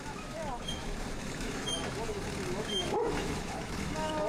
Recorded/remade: remade